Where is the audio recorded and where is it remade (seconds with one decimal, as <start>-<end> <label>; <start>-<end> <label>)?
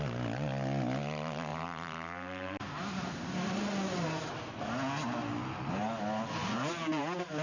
0.0-1.5 recorded; 1.5-4.5 remade; 4.5-6.4 recorded; 6.4-7.0 remade; 7.0-7.4 recorded